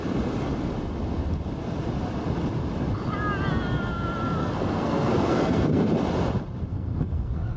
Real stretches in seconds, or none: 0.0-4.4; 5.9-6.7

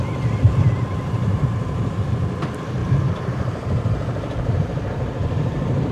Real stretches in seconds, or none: 0.0-0.9; 2.0-2.8

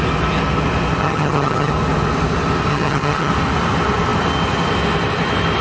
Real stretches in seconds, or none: 0.0-1.0; 1.7-2.7; 3.3-5.6

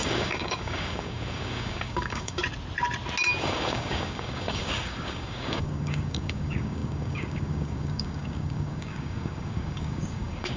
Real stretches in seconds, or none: 2.4-3.4

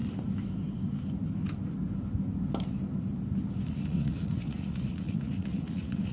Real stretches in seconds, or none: 0.0-3.7

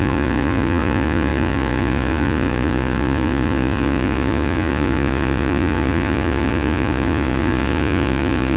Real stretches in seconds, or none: none